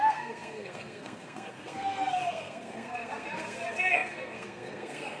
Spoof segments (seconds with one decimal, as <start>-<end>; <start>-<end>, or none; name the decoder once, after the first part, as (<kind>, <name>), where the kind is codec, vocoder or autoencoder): 0.0-5.2 (codec, SNAC)